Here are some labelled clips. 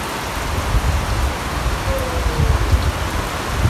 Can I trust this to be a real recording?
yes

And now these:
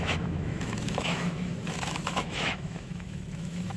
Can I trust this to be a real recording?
no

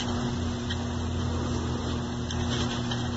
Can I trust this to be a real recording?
yes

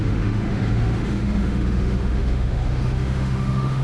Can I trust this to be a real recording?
no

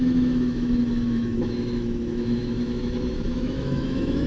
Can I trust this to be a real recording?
no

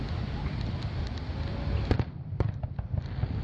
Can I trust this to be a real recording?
yes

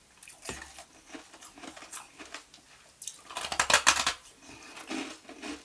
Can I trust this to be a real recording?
yes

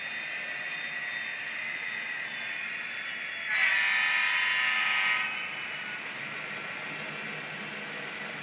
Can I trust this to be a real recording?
yes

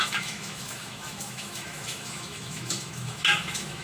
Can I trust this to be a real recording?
no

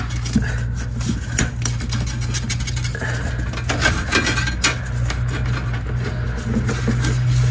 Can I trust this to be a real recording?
yes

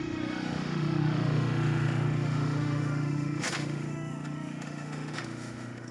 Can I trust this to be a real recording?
no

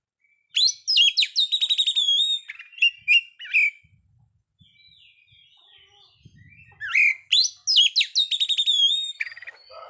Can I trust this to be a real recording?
yes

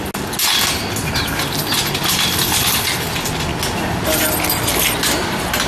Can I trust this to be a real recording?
yes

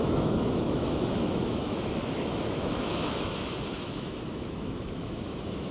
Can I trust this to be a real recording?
no